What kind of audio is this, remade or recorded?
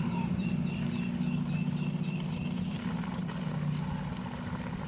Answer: recorded